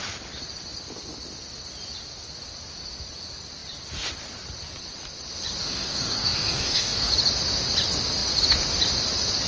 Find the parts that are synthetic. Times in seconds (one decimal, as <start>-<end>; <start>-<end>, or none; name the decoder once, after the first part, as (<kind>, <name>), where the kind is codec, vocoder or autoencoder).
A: 5.6-7.1 (codec, DAC)